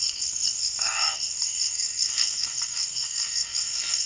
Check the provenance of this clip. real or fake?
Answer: fake